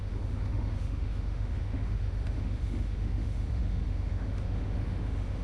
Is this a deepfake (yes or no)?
yes